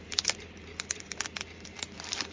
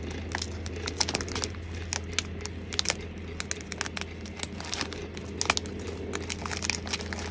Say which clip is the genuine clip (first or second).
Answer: second